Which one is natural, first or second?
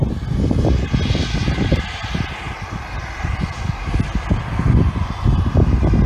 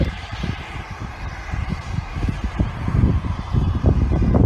first